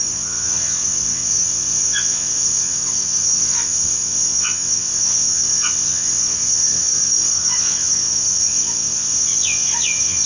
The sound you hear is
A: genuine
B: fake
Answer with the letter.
B